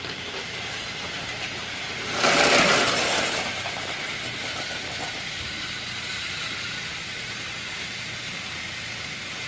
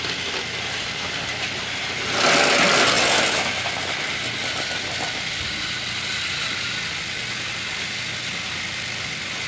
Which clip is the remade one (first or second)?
first